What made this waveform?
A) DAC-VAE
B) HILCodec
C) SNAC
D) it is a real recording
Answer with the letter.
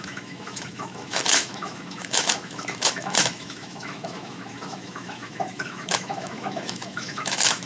A